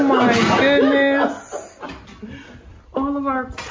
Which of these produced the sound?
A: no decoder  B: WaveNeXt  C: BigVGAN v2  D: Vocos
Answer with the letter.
A